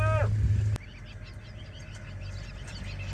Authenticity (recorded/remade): recorded